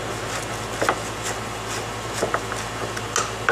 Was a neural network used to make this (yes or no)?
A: no